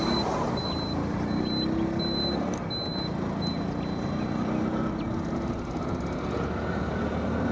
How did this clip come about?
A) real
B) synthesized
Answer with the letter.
A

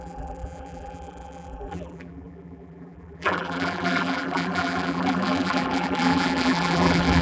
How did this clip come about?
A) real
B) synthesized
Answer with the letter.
B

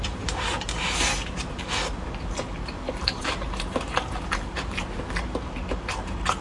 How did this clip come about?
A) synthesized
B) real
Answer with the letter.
A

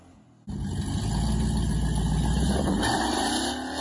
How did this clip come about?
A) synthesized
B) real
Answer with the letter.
B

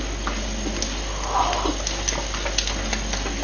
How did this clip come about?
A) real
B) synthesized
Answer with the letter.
A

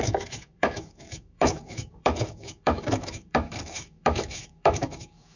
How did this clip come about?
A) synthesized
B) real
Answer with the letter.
A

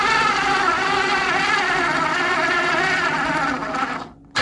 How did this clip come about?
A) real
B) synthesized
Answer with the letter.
A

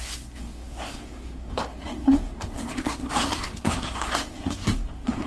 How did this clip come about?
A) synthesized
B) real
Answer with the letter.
A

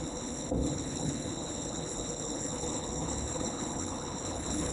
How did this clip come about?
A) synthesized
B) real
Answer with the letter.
A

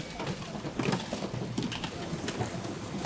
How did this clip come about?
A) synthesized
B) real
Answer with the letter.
B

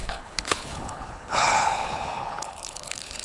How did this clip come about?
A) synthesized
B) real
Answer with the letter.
A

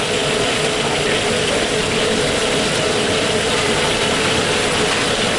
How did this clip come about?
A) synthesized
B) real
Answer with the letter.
B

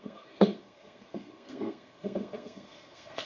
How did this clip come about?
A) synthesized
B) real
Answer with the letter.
A